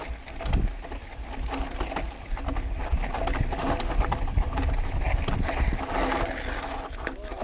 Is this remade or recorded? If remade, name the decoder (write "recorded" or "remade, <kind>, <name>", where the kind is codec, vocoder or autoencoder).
recorded